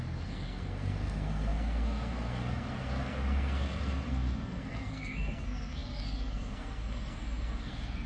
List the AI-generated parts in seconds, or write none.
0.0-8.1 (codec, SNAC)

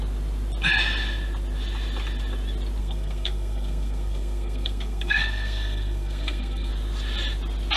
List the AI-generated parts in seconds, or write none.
2.8-6.7 (codec, SNAC)

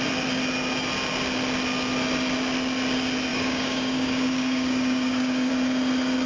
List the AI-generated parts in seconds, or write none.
3.3-5.5 (codec, DAC)